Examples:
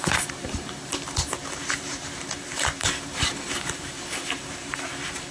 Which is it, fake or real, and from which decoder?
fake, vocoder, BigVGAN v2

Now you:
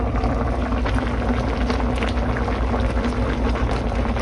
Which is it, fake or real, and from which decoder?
real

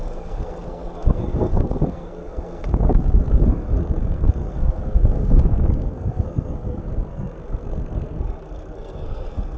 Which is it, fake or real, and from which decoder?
fake, codec, SNAC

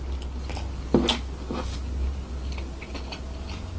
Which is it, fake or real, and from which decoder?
real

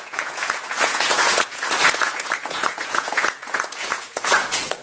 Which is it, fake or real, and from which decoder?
fake, vocoder, Vocos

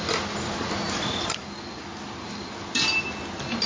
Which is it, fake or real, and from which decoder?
real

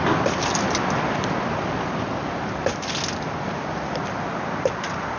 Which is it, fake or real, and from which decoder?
real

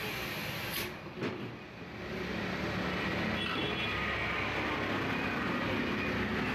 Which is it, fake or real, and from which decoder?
real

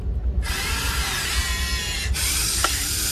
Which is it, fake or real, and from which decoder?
real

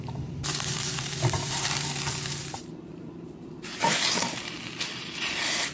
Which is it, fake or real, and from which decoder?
fake, vocoder, BigVGAN v2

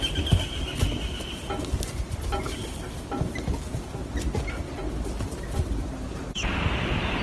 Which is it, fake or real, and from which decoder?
real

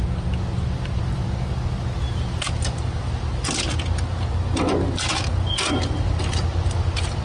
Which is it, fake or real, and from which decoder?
real